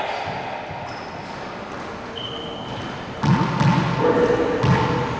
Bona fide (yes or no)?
yes